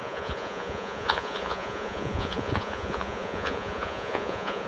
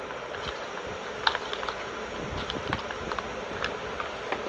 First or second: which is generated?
first